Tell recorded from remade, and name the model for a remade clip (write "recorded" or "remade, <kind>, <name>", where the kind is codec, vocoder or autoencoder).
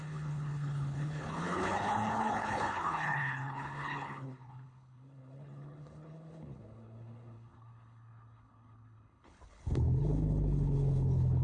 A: remade, codec, HILCodec